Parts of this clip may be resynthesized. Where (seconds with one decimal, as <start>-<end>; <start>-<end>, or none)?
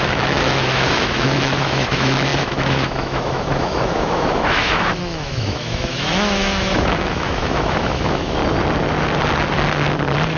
0.0-8.4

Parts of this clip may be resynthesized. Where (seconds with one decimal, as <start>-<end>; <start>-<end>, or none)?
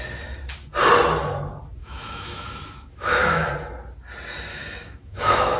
1.8-3.5; 4.5-5.6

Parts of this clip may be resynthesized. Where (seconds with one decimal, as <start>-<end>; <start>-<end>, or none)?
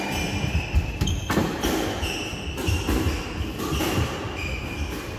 none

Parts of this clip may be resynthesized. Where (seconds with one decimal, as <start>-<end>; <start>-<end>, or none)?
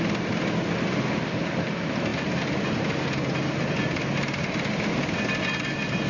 none